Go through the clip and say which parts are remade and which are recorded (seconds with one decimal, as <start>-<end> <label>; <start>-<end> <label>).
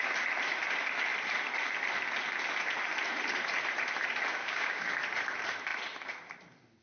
0.0-4.4 recorded; 4.4-4.9 remade; 4.9-6.8 recorded